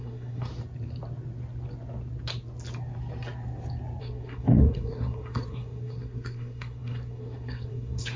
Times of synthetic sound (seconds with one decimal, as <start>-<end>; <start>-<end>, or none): 0.0-0.5; 4.0-8.2